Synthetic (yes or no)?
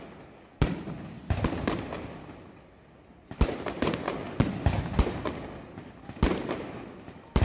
no